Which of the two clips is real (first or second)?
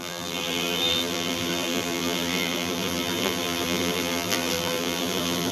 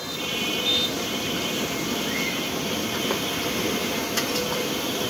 second